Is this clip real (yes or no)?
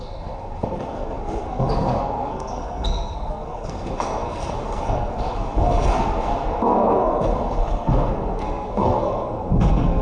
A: no